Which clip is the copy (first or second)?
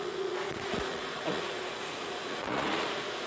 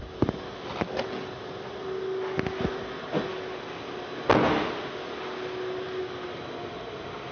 first